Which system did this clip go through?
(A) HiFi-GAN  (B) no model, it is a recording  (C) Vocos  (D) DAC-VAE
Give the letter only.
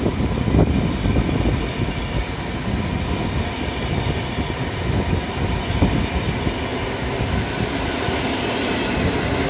B